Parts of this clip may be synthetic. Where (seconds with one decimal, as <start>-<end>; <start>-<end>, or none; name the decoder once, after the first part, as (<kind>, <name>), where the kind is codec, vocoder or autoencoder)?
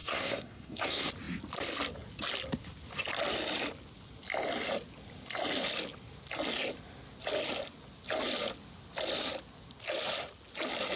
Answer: 0.0-1.1 (codec, SNAC)